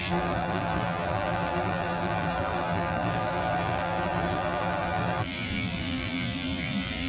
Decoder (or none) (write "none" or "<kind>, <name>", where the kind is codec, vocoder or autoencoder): vocoder, BigVGAN v2